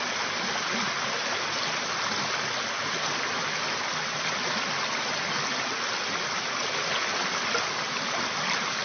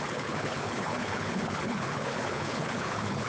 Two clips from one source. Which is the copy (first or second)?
second